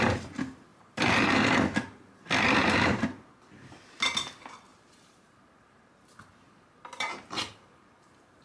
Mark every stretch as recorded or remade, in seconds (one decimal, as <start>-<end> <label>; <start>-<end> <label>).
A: 0.0-0.7 recorded; 0.7-1.4 remade; 1.4-2.6 recorded; 2.6-3.3 remade; 3.3-4.7 recorded; 4.7-8.4 remade